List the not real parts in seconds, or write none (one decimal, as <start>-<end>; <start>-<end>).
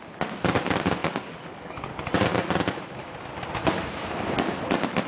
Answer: 1.0-1.9